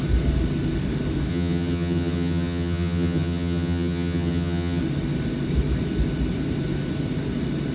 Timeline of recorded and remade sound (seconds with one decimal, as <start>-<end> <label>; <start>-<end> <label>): 0.0-1.3 recorded; 1.3-4.8 remade; 4.8-7.7 recorded